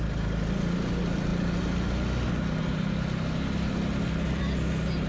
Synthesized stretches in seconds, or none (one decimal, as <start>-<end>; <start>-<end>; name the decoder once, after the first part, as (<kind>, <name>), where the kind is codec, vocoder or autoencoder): none